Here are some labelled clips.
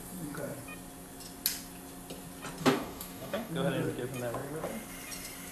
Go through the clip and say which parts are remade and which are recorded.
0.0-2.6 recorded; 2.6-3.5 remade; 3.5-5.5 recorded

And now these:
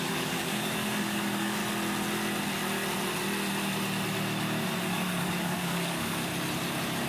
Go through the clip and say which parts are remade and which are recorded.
0.0-1.6 remade; 1.6-4.8 recorded; 4.8-6.3 remade; 6.3-7.1 recorded

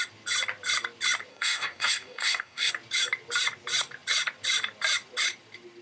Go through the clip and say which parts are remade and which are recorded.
0.0-1.3 recorded; 1.3-2.7 remade; 2.7-5.8 recorded

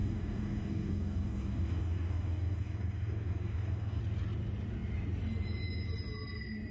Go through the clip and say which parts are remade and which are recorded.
0.0-4.0 remade; 4.0-6.7 recorded

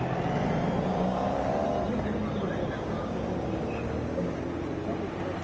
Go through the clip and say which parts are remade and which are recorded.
0.0-0.9 recorded; 0.9-1.5 remade; 1.5-2.6 recorded; 2.6-3.4 remade; 3.4-5.4 recorded

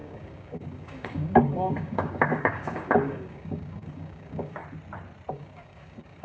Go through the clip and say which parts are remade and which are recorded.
0.0-4.6 remade; 4.6-5.3 recorded; 5.3-6.2 remade

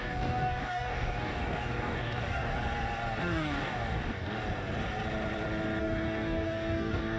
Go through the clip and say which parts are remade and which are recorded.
0.0-2.5 remade; 2.5-3.2 recorded; 3.2-4.4 remade; 4.4-5.8 recorded; 5.8-7.2 remade

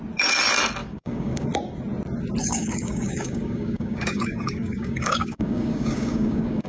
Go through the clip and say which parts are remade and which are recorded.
0.0-0.8 recorded; 0.8-1.5 remade; 1.5-2.4 recorded; 2.4-6.7 remade